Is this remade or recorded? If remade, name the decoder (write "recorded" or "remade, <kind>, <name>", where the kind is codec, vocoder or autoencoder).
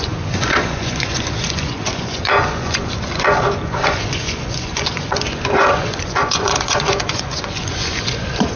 remade, vocoder, Vocos